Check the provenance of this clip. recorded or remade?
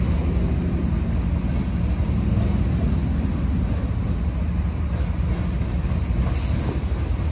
recorded